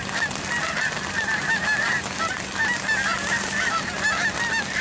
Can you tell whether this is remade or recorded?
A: recorded